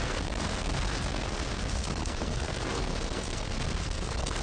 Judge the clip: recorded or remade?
remade